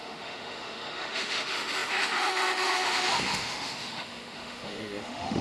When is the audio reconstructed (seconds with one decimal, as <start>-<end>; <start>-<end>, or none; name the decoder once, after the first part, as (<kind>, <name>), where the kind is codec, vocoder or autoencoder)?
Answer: 0.0-5.4 (autoencoder, DAC-VAE)